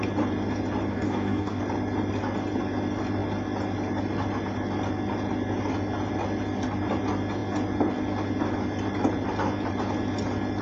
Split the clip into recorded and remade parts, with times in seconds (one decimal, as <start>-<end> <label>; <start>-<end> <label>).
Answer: 0.0-0.9 recorded; 0.9-1.6 remade; 1.6-10.6 recorded